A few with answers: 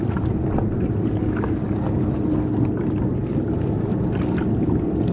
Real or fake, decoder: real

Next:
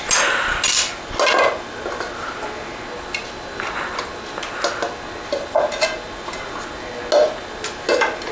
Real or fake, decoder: real